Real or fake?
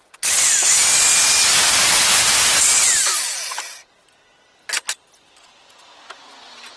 real